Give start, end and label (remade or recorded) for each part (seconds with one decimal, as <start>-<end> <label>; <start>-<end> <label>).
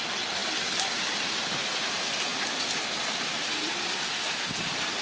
0.0-5.0 recorded